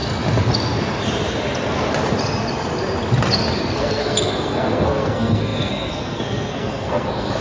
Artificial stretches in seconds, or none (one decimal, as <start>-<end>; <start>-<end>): 3.6-7.4